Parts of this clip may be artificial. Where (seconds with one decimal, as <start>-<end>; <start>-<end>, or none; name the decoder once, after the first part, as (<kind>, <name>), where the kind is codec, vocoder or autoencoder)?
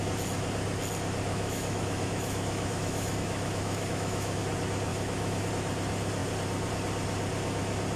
1.3-4.4 (autoencoder, DAC-VAE); 4.9-5.5